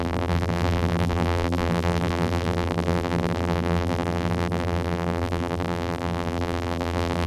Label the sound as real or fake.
fake